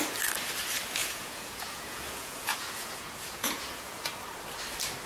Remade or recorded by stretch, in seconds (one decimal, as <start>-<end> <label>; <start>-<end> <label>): 0.0-1.0 recorded; 1.0-4.1 remade; 4.1-5.1 recorded